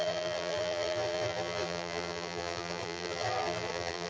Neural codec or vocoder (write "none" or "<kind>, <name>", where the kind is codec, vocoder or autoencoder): vocoder, BigVGAN v2